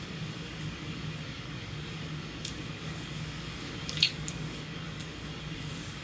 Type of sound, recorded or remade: remade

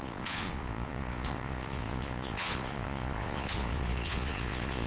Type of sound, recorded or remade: remade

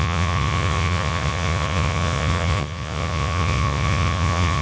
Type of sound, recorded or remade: remade